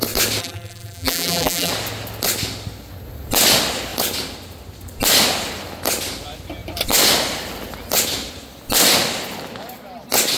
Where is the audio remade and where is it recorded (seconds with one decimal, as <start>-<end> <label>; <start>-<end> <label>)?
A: 0.0-0.4 recorded; 0.4-1.7 remade; 1.7-10.4 recorded

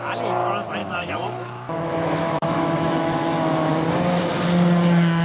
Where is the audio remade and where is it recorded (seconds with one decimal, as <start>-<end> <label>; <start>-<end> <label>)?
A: 0.0-0.8 recorded; 0.8-3.9 remade; 3.9-5.2 recorded

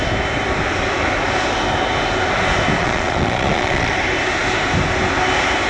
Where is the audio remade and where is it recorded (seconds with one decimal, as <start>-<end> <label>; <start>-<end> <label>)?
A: 0.0-2.8 recorded; 2.8-3.9 remade; 3.9-5.7 recorded